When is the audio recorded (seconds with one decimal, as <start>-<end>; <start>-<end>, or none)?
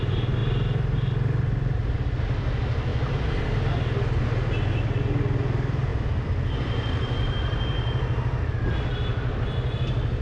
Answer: 0.0-10.2